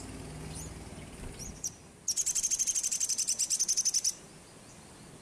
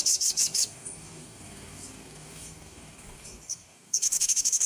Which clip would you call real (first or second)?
first